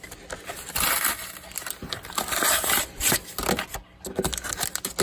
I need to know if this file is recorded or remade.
recorded